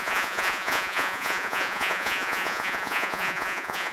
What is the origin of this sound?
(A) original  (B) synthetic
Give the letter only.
B